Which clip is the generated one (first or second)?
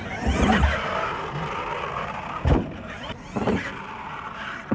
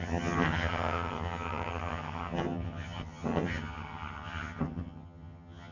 second